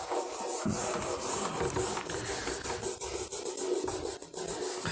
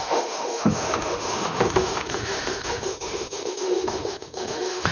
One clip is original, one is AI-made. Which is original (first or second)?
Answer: first